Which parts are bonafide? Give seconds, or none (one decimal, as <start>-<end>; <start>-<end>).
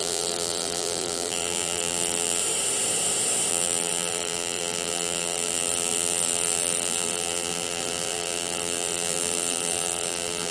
2.4-3.5